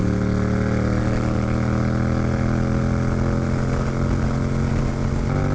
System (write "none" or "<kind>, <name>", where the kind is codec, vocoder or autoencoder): none